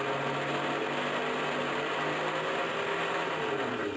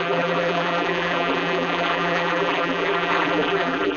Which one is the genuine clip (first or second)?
first